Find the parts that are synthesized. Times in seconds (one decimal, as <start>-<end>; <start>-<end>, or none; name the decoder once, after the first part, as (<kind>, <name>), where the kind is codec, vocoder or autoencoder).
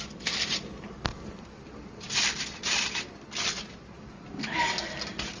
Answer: none